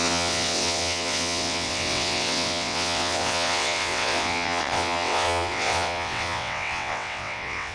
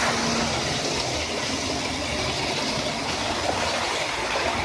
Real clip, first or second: second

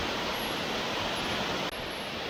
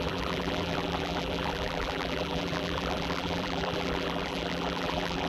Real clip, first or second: first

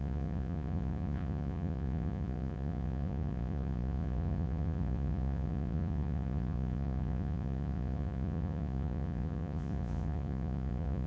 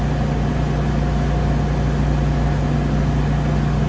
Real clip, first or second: second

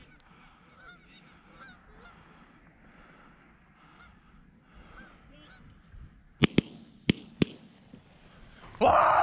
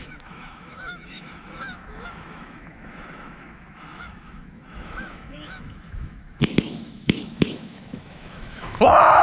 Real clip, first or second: first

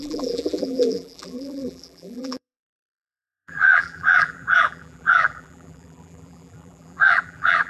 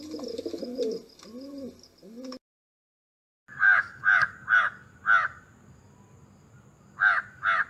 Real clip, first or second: second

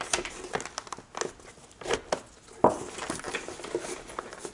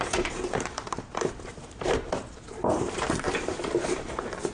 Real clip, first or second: first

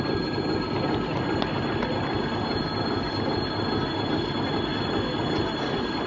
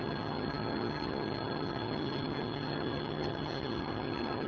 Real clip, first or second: first